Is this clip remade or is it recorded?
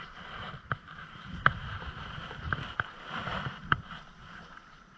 remade